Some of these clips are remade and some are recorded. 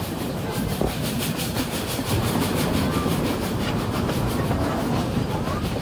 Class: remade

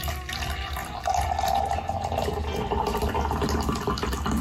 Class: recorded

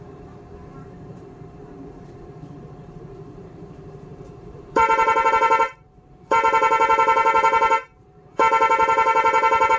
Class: remade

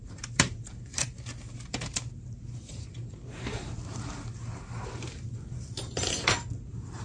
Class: remade